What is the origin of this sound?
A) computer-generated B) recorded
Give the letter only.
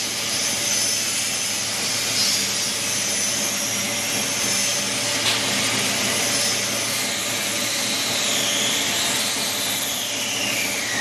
B